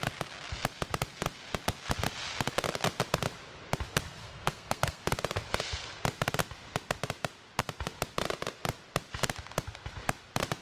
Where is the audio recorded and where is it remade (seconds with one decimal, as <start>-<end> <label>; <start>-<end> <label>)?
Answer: 0.0-4.2 recorded; 4.2-5.0 remade; 5.0-10.6 recorded